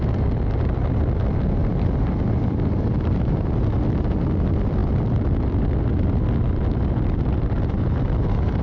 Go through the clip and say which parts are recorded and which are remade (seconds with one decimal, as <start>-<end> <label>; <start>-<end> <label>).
0.0-1.6 recorded; 1.6-3.7 remade; 3.7-4.8 recorded; 4.8-5.8 remade; 5.8-8.6 recorded